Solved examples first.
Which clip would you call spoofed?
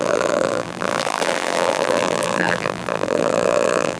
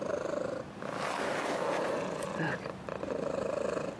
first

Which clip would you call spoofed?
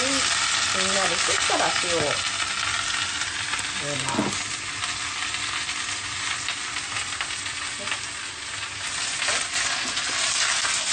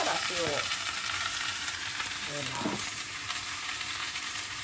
second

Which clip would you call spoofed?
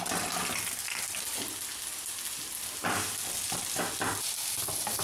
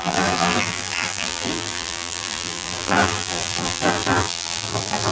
second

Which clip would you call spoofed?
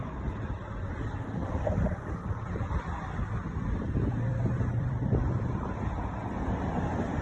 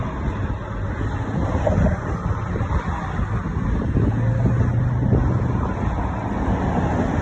first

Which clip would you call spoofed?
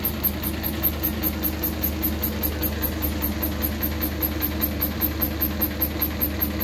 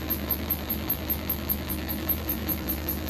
second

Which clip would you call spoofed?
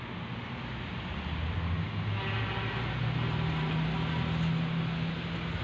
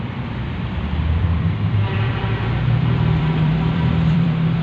second